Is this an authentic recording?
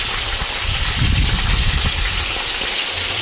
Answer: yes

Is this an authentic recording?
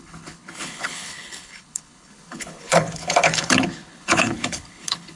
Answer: no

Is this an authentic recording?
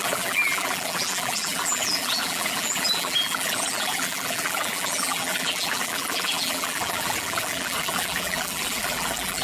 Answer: no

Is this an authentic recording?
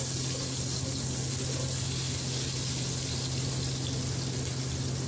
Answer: yes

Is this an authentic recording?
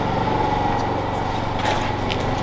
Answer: yes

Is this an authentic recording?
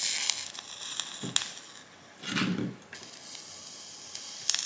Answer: yes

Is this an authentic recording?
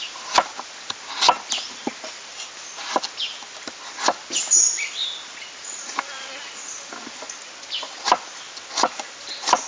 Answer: yes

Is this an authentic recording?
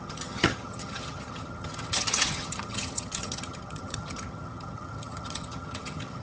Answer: no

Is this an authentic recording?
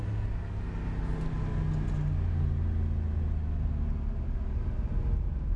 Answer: yes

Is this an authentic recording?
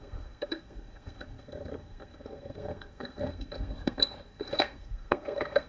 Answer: no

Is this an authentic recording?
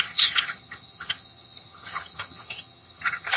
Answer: no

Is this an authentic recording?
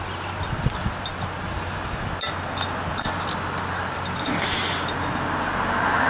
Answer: yes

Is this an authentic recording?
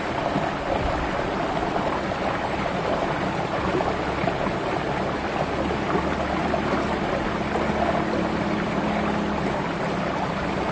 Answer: yes